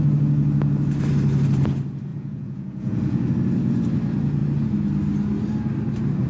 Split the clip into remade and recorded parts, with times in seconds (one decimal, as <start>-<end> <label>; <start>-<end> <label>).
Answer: 0.0-2.1 recorded; 2.1-3.3 remade; 3.3-6.3 recorded